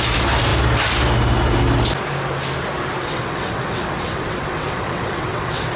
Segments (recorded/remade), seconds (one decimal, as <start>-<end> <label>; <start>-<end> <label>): 0.0-3.0 recorded; 3.0-5.8 remade